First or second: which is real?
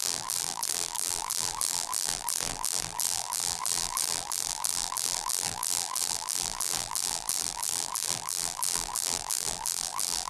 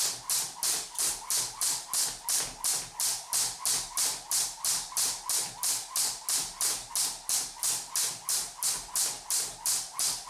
second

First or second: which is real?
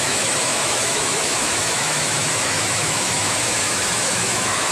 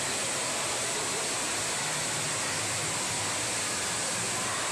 second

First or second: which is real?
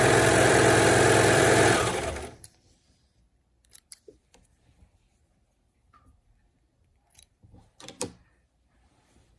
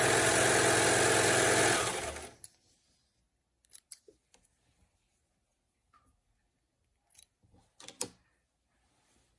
second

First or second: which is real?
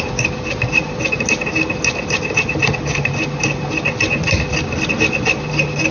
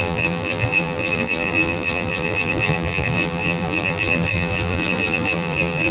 first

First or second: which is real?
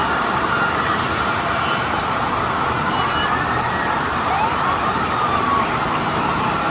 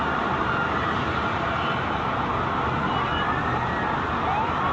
second